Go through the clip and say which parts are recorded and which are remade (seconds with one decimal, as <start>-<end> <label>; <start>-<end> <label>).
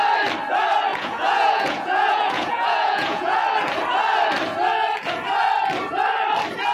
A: 0.0-0.9 recorded; 0.9-3.4 remade; 3.4-6.7 recorded